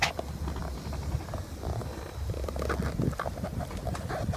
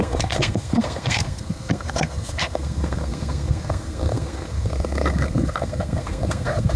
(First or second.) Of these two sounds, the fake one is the second